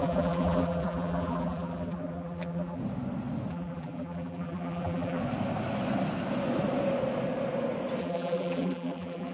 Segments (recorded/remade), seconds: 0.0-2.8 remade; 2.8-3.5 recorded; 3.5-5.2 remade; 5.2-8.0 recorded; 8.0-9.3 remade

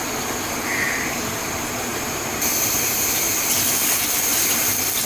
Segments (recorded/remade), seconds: 0.0-5.1 recorded

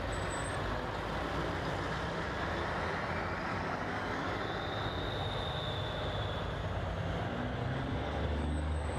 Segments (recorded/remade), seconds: 0.0-3.5 recorded; 3.5-4.4 remade; 4.4-7.6 recorded; 7.6-9.0 remade

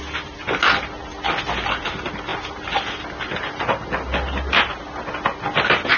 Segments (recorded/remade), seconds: 0.0-6.0 recorded

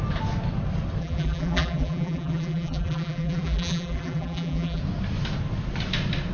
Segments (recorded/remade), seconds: 0.0-1.0 recorded; 1.0-4.8 remade; 4.8-6.3 recorded

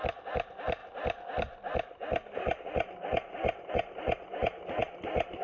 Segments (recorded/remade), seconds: 0.0-5.4 recorded

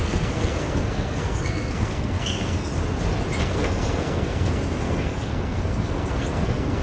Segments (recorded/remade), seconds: 0.0-2.7 remade; 2.7-3.4 recorded; 3.4-6.8 remade

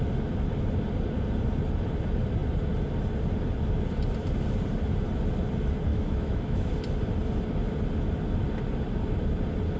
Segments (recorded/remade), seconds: 0.0-5.9 recorded; 5.9-6.7 remade; 6.7-9.8 recorded